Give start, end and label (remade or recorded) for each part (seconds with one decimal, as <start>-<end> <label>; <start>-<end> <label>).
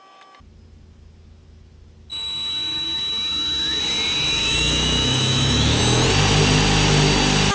0.0-2.1 recorded; 2.1-3.8 remade; 3.8-4.3 recorded; 4.3-5.8 remade; 5.8-7.5 recorded